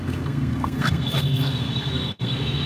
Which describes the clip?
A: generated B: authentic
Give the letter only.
A